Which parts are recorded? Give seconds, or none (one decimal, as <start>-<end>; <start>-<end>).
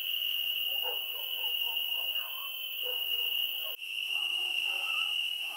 none